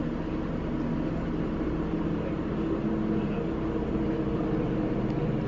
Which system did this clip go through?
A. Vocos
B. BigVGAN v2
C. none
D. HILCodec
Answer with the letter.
C